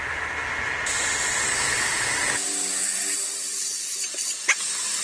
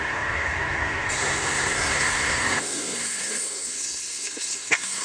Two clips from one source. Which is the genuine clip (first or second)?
first